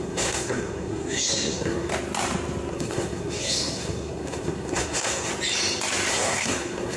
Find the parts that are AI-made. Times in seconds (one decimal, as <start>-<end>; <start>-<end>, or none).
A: 0.0-1.9; 2.7-5.3; 6.1-7.0